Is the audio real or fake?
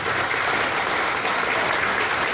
real